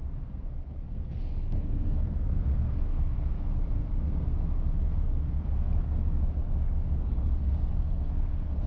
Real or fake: fake